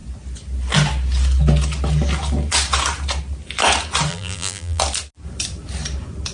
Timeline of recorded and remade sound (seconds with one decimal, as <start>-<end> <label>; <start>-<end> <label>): 0.0-4.1 recorded; 4.1-4.8 remade; 4.8-6.3 recorded

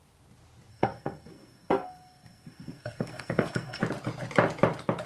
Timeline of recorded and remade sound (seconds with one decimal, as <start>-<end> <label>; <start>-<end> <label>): 0.0-0.7 recorded; 0.7-3.8 remade; 3.8-5.1 recorded

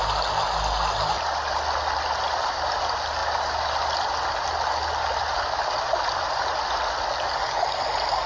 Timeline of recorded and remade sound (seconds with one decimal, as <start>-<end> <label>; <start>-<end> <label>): 0.0-8.3 recorded

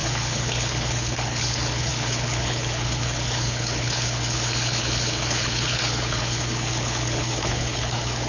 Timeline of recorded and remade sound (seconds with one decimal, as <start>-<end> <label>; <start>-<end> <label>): 0.0-8.3 remade

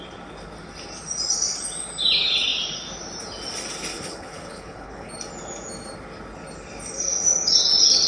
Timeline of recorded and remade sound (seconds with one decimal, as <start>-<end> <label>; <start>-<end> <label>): 0.0-3.9 recorded; 3.9-5.1 remade; 5.1-8.1 recorded

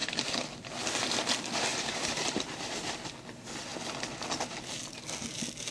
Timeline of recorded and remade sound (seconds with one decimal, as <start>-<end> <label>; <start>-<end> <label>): 0.0-1.7 recorded; 1.7-3.1 remade; 3.1-5.7 recorded

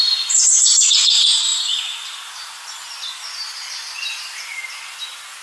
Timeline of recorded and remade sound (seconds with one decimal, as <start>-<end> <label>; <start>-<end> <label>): 0.0-5.4 recorded